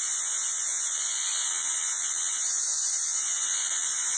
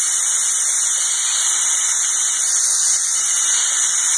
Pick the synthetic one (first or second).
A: first